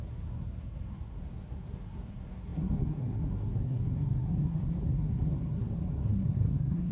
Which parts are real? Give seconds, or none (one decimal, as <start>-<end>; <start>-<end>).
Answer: none